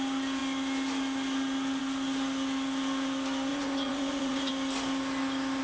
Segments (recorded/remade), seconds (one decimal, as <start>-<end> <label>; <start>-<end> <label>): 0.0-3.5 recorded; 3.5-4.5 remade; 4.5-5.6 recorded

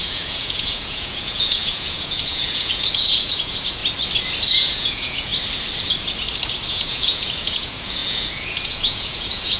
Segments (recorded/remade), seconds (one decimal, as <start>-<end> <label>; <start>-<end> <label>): 0.0-3.8 remade; 3.8-4.5 recorded; 4.5-5.3 remade; 5.3-6.7 recorded; 6.7-9.6 remade

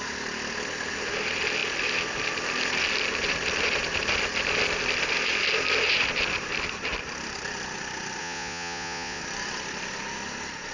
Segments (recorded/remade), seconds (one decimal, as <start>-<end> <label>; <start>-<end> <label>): 0.0-8.2 recorded; 8.2-9.2 remade; 9.2-10.7 recorded

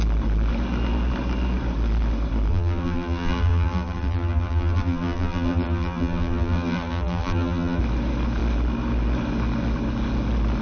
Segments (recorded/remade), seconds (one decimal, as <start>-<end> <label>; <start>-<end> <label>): 0.0-2.5 recorded; 2.5-7.8 remade; 7.8-10.6 recorded

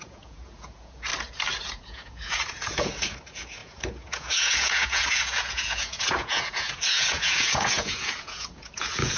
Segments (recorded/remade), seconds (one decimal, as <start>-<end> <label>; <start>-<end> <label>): 0.0-1.1 remade; 1.1-1.7 recorded; 1.7-9.2 remade

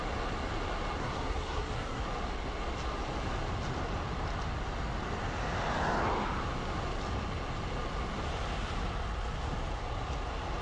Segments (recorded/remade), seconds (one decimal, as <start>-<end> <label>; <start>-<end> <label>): 0.0-1.0 recorded; 1.0-2.0 remade; 2.0-10.6 recorded

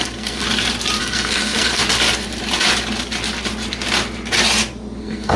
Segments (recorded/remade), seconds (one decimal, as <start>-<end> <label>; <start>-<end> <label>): 0.0-0.4 remade; 0.4-1.0 recorded; 1.0-1.8 remade; 1.8-5.0 recorded; 5.0-5.4 remade

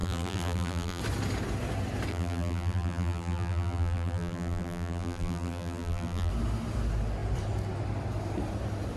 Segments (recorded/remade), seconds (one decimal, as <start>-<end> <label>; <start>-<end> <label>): 0.0-1.0 remade; 1.0-2.1 recorded; 2.1-6.3 remade; 6.3-9.0 recorded